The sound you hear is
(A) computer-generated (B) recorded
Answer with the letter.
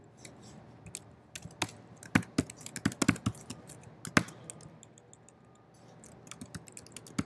B